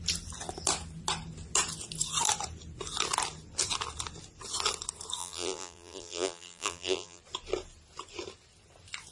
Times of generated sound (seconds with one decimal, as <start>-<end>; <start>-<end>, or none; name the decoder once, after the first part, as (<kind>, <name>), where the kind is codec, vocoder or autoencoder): 5.2-7.2 (vocoder, BigVGAN v2)